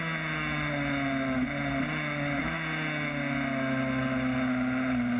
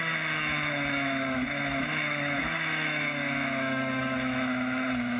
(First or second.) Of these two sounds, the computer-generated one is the second